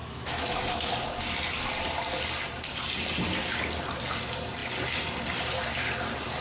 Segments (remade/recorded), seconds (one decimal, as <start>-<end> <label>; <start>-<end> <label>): 0.0-0.9 remade; 0.9-6.4 recorded